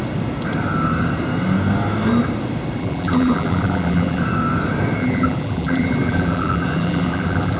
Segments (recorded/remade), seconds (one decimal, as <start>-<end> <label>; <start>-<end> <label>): 0.0-2.8 recorded; 2.8-4.2 remade; 4.2-5.0 recorded; 5.0-7.6 remade